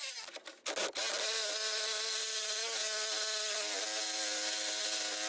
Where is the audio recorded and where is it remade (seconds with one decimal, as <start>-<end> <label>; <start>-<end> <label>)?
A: 0.0-5.3 recorded